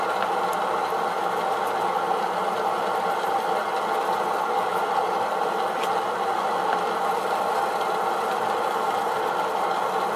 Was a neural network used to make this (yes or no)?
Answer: no